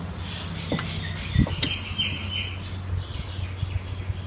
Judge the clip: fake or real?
real